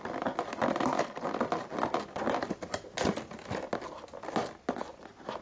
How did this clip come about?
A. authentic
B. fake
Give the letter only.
A